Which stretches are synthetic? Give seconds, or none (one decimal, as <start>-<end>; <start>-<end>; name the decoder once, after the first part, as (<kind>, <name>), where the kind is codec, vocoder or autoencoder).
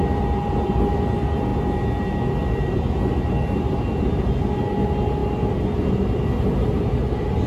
none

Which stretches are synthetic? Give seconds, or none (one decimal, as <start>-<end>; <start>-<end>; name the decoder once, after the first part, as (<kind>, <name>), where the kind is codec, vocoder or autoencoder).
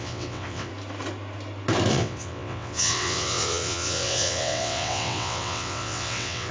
0.0-0.7 (vocoder, WaveNeXt); 1.9-6.5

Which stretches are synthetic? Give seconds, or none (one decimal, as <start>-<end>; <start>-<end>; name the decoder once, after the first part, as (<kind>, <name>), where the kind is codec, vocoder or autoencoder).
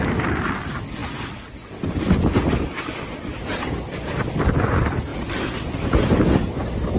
none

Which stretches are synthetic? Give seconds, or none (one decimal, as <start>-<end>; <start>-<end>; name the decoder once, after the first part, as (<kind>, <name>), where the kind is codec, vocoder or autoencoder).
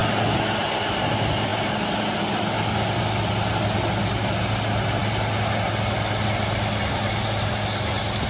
none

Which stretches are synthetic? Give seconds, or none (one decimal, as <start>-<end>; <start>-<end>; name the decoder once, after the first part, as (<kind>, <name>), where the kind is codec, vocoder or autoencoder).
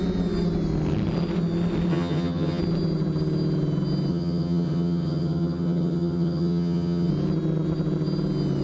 1.9-2.6 (vocoder, HiFi-GAN); 4.1-7.1